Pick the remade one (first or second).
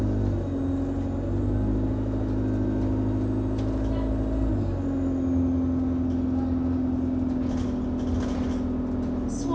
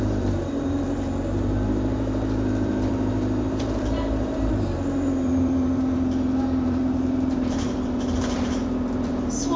second